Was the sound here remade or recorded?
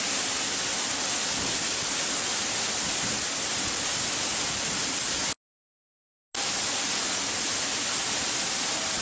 recorded